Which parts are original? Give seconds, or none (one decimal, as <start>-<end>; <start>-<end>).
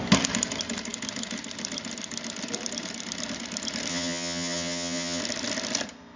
0.0-3.9; 5.2-6.2